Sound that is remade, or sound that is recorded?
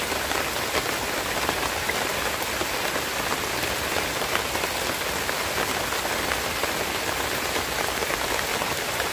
recorded